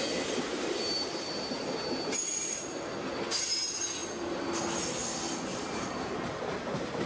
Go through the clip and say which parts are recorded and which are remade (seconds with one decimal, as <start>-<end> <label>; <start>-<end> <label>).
0.0-4.0 recorded; 4.0-4.9 remade; 4.9-5.5 recorded; 5.5-6.4 remade; 6.4-7.1 recorded